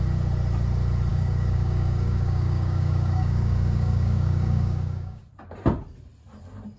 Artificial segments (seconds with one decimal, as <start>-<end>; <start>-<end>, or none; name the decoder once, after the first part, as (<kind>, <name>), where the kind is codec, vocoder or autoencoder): 1.1-5.2 (codec, DAC)